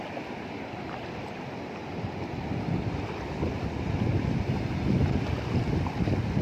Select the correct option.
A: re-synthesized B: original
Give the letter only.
B